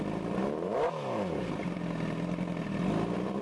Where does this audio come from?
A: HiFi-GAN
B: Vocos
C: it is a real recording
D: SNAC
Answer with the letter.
C